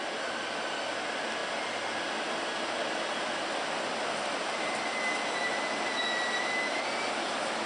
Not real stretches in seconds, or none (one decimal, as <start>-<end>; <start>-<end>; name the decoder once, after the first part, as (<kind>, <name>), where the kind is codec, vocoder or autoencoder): none